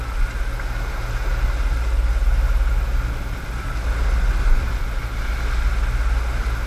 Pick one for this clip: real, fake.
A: real